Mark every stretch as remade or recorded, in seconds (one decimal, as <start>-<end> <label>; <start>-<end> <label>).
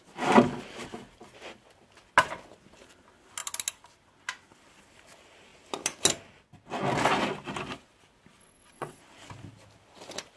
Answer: 0.0-8.4 recorded; 8.4-9.0 remade; 9.0-10.4 recorded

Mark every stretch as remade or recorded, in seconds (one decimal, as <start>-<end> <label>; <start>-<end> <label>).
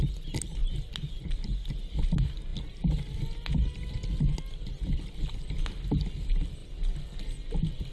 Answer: 0.0-7.9 recorded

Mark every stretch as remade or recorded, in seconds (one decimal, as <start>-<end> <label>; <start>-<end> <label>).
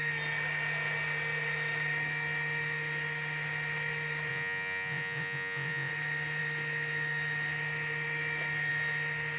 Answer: 0.0-4.3 recorded; 4.3-5.9 remade; 5.9-9.4 recorded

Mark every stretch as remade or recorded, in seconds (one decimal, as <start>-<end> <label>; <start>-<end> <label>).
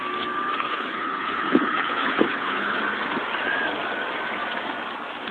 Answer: 0.0-0.5 recorded; 0.5-2.8 remade; 2.8-5.3 recorded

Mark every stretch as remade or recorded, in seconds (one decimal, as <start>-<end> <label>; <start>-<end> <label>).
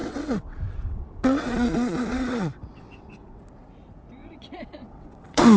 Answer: 0.0-3.4 remade; 3.4-4.2 recorded; 4.2-5.6 remade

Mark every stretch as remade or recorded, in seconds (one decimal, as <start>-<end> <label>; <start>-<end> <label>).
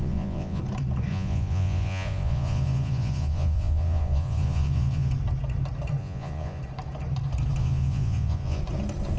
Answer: 0.0-0.6 remade; 0.6-1.1 recorded; 1.1-5.1 remade; 5.1-6.0 recorded; 6.0-6.6 remade; 6.6-7.6 recorded; 7.6-8.6 remade; 8.6-9.2 recorded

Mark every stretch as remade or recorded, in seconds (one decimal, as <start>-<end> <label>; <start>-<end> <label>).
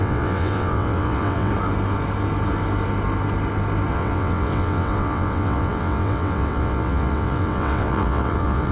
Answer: 0.0-1.5 remade; 1.5-3.9 recorded; 3.9-8.7 remade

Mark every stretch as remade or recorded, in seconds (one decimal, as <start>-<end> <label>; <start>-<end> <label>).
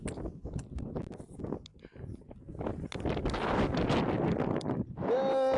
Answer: 0.0-5.6 recorded